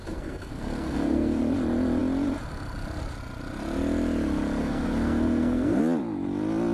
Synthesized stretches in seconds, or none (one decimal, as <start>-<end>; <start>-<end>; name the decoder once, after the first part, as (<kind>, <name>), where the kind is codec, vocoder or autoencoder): 0.0-1.4 (codec, SNAC); 4.6-5.8